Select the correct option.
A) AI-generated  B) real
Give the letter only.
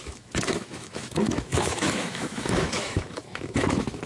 A